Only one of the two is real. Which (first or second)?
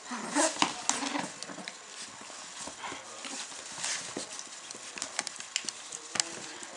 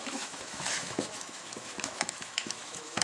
first